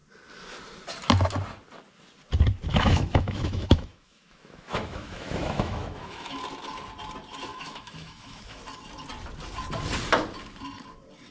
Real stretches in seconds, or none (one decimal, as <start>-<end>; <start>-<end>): 0.0-2.7; 6.4-7.5; 8.6-11.3